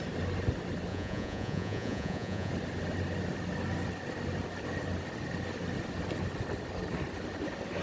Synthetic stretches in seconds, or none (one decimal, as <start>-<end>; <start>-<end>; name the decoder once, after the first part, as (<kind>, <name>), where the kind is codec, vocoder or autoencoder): 0.9-2.5 (vocoder, Vocos)